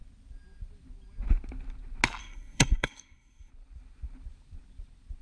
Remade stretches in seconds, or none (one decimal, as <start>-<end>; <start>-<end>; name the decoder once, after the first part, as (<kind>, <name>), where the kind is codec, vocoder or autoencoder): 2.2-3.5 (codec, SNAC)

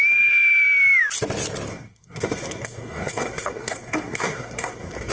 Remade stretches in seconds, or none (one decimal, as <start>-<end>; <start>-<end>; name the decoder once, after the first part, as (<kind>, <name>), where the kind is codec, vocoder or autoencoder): 1.7-5.1 (codec, SNAC)

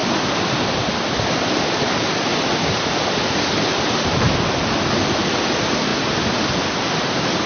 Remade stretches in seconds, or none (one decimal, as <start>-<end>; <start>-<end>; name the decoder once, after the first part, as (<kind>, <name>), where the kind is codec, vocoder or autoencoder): none